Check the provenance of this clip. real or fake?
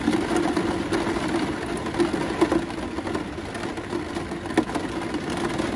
real